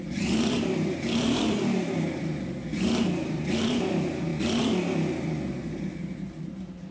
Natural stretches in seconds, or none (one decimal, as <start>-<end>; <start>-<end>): 4.3-5.5

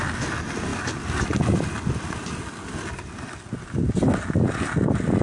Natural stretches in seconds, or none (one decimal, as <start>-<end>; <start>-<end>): 0.0-5.2